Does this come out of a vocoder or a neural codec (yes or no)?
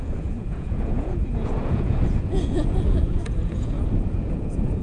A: yes